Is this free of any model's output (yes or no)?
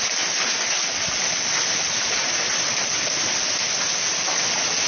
yes